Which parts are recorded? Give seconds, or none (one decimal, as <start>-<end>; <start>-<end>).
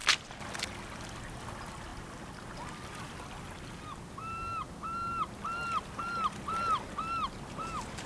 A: 0.0-8.1